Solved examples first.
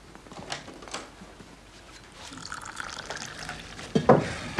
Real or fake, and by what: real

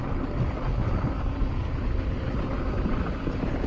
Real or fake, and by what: real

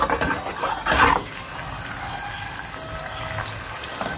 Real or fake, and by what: real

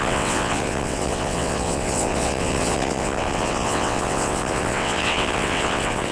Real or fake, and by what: fake, vocoder, WaveNeXt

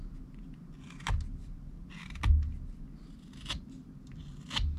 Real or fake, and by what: real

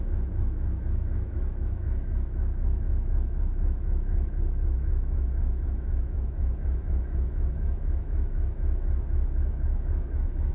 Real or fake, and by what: fake, autoencoder, DAC-VAE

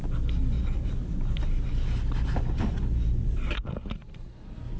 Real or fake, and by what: real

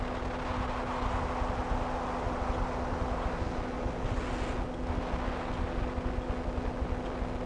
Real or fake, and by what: real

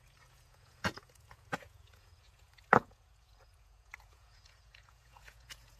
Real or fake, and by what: fake, vocoder, Vocos